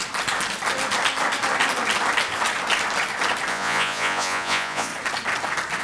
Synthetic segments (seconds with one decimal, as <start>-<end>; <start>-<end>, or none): 3.5-4.9